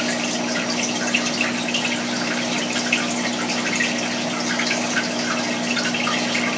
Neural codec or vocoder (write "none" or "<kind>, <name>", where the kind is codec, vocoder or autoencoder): none